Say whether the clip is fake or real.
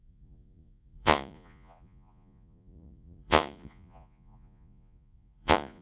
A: fake